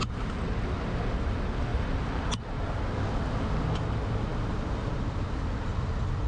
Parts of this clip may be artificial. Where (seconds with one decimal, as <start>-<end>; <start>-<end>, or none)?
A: 1.7-2.8